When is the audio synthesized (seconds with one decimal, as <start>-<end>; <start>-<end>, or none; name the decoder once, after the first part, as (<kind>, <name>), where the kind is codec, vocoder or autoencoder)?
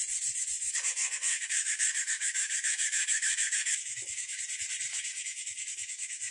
0.6-4.4 (autoencoder, DAC-VAE); 4.9-6.3